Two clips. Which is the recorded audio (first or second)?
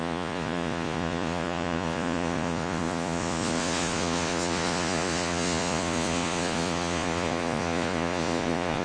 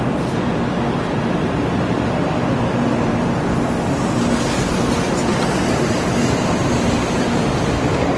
second